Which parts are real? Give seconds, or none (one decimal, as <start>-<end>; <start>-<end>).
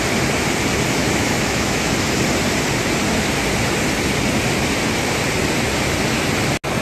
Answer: 0.0-1.0; 1.9-6.8